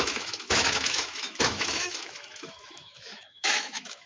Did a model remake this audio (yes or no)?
yes